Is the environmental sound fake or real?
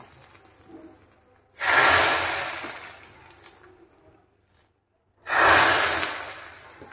real